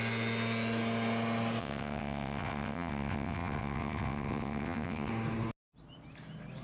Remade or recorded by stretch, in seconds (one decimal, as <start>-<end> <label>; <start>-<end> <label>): 0.0-1.6 recorded; 1.6-5.1 remade; 5.1-6.6 recorded

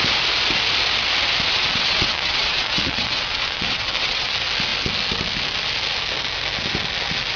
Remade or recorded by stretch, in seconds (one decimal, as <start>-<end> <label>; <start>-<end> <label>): 0.0-1.5 recorded; 1.5-4.3 remade; 4.3-7.4 recorded

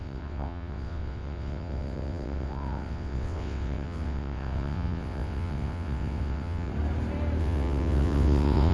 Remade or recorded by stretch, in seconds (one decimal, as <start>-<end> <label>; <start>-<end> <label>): 0.0-6.7 remade; 6.7-7.4 recorded; 7.4-8.7 remade

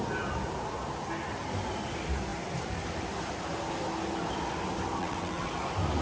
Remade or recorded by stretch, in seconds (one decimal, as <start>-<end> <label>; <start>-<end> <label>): 0.0-5.0 recorded; 5.0-5.5 remade; 5.5-6.0 recorded